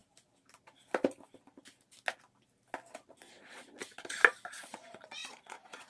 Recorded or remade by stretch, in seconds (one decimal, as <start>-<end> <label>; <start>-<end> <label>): 0.0-3.3 recorded; 3.3-3.8 remade; 3.8-4.5 recorded; 4.5-5.9 remade